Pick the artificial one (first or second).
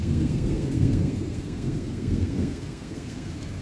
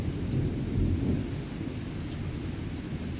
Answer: first